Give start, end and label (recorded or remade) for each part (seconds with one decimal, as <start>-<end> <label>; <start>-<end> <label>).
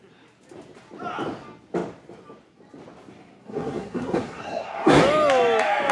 0.0-3.4 recorded; 3.4-5.0 remade; 5.0-5.9 recorded